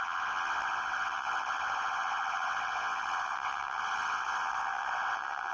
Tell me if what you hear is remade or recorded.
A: remade